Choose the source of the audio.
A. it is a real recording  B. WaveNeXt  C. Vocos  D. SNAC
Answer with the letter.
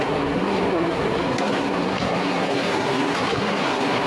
D